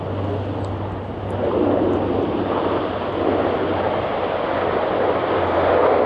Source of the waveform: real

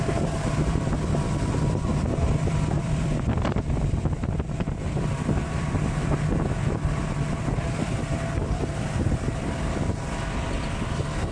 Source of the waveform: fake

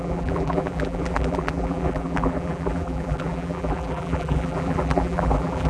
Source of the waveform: fake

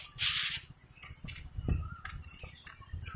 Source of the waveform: real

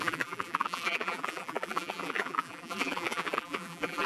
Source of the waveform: fake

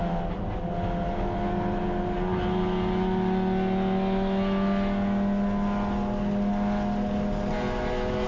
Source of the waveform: real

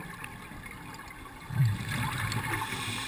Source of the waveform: real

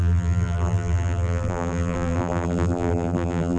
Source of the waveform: fake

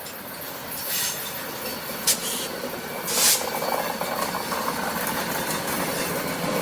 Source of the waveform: real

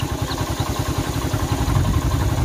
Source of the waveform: real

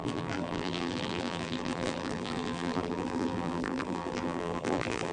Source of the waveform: fake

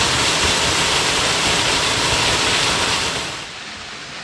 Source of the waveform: real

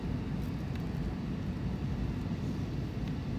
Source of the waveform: real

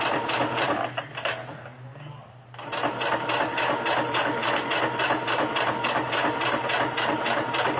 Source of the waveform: real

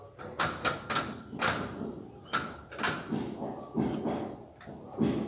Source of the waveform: real